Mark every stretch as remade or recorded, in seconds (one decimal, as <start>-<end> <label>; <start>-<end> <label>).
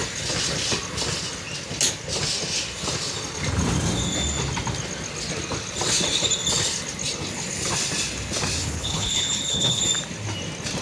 0.0-8.6 recorded; 8.6-9.8 remade; 9.8-10.8 recorded